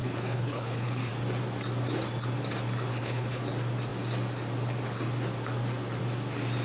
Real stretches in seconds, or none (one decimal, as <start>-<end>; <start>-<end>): 1.1-2.9; 3.4-6.6